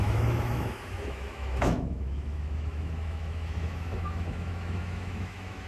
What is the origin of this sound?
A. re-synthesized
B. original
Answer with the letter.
A